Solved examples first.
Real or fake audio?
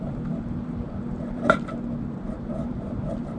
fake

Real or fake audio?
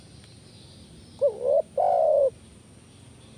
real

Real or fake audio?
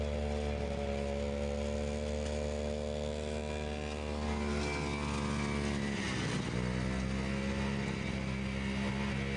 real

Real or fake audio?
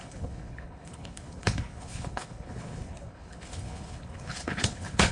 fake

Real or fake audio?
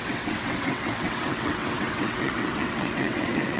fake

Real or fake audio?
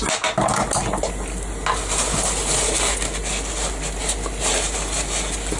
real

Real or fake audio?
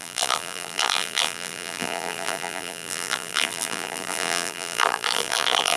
fake